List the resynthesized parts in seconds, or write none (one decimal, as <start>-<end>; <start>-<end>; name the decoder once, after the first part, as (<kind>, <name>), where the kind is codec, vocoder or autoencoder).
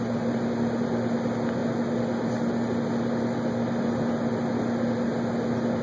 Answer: none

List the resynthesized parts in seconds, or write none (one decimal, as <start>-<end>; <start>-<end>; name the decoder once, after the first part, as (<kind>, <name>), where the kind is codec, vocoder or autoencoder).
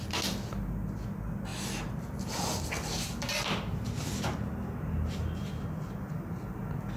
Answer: 1.5-3.3 (vocoder, BigVGAN v2)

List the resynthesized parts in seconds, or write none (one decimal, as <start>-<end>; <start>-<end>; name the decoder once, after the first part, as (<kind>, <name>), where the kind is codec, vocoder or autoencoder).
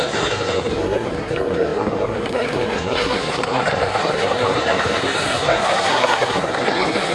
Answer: 0.0-7.1 (codec, SNAC)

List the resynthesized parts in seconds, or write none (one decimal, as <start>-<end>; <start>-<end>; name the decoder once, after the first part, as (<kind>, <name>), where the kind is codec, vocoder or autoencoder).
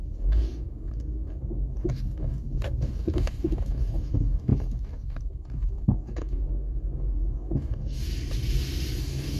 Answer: 0.0-8.1 (codec, DAC); 9.0-9.4